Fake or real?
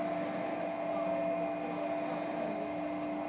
real